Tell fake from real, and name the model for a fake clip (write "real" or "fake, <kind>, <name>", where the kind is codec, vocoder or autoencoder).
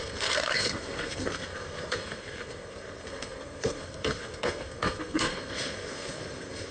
fake, codec, SNAC